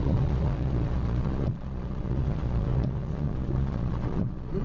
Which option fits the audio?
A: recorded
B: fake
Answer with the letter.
B